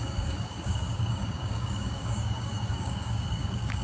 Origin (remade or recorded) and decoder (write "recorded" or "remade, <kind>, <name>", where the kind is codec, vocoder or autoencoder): remade, codec, DAC